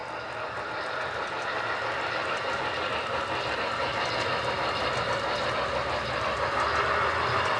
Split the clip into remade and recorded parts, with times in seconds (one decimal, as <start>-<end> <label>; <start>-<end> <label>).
0.0-7.6 recorded